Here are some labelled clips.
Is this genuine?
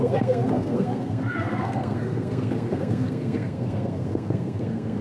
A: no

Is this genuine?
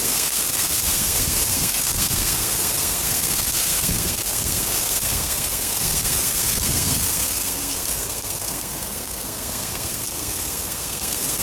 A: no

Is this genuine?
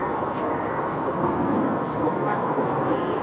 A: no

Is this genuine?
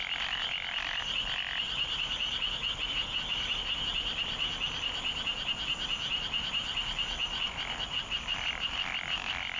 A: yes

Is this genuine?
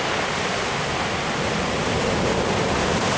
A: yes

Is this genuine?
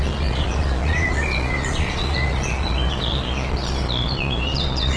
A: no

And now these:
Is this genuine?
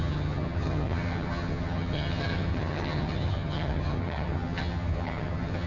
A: no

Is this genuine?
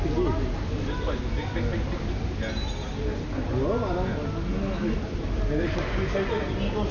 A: yes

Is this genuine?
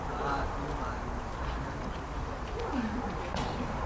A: no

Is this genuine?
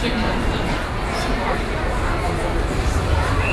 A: yes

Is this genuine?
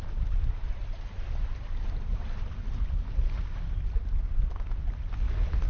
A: yes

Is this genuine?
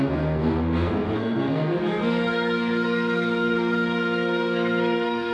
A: no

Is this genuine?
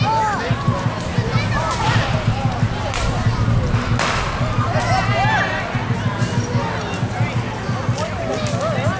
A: yes